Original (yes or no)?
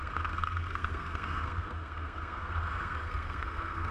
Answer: no